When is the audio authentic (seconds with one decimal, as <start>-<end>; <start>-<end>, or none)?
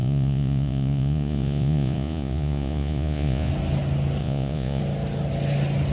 3.5-4.2; 4.8-5.9